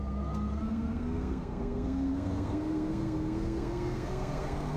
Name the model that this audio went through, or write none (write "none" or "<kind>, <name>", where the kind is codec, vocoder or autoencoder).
codec, SNAC